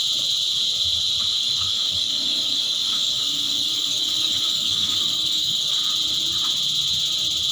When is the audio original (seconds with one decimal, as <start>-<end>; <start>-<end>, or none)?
0.0-1.3; 5.8-7.5